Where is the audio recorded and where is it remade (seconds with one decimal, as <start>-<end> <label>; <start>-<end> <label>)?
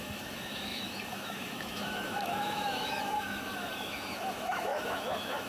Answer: 0.0-5.5 remade